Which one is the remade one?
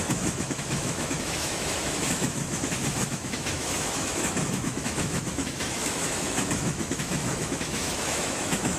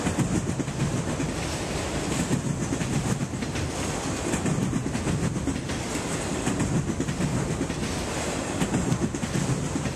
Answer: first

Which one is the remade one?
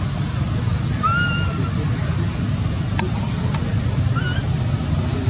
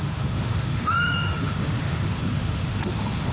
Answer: second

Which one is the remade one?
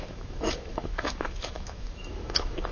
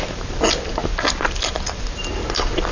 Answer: first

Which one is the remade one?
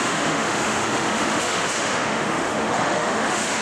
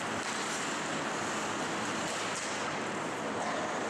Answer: first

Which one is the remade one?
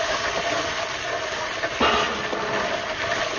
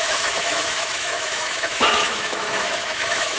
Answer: second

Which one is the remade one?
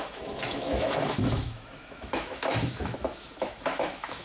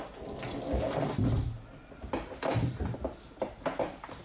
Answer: first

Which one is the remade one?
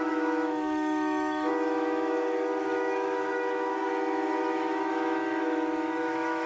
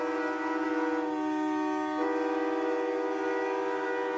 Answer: first